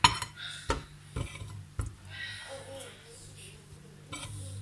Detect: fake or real real